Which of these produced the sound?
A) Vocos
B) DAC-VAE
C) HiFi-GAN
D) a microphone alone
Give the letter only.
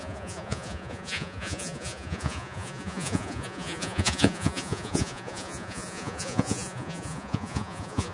A